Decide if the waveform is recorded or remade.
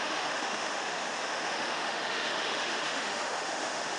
remade